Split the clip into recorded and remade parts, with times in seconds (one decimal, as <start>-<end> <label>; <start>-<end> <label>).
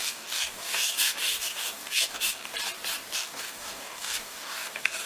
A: 0.0-2.5 remade; 2.5-3.1 recorded; 3.1-5.1 remade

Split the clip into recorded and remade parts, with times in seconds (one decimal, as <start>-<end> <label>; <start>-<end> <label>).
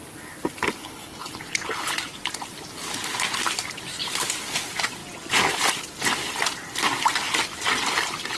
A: 0.0-0.8 recorded; 0.8-1.9 remade; 1.9-8.4 recorded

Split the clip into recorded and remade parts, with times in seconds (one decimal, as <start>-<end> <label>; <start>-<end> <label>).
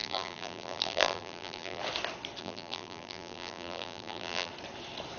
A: 0.0-1.8 remade; 1.8-2.4 recorded; 2.4-4.5 remade; 4.5-5.2 recorded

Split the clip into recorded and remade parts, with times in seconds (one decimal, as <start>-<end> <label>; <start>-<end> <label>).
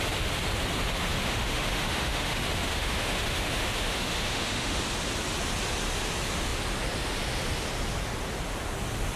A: 0.0-1.1 recorded; 1.1-4.8 remade; 4.8-9.2 recorded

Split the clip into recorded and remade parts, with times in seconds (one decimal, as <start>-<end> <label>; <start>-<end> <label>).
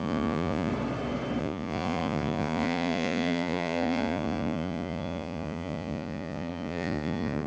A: 0.0-0.7 remade; 0.7-1.4 recorded; 1.4-7.5 remade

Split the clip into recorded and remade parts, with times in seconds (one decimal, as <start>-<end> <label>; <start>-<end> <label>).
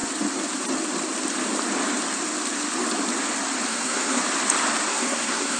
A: 0.0-3.7 recorded; 3.7-4.2 remade; 4.2-4.9 recorded; 4.9-5.6 remade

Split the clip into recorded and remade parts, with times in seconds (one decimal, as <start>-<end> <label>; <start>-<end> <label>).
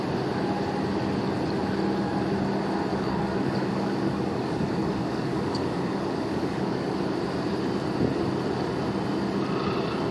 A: 0.0-2.9 recorded; 2.9-7.0 remade; 7.0-10.1 recorded